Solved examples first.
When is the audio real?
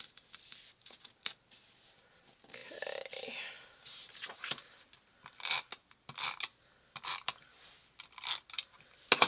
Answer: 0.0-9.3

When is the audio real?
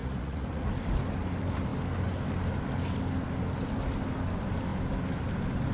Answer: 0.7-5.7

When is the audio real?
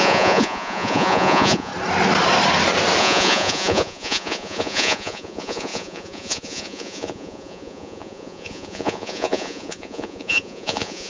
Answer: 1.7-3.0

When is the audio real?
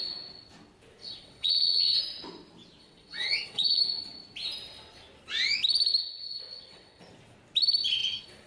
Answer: 0.0-1.0; 2.0-2.8; 3.8-6.0; 7.0-8.5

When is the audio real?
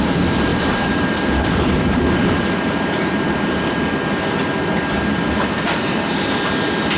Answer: 0.0-0.5; 3.8-7.0